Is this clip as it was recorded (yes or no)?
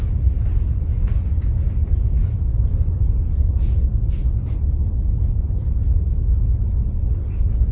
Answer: yes